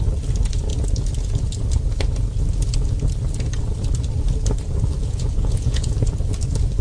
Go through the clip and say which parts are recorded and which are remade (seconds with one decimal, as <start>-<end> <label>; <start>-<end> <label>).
0.0-5.0 recorded; 5.0-5.9 remade; 5.9-6.8 recorded